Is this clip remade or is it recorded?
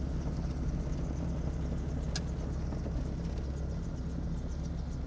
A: recorded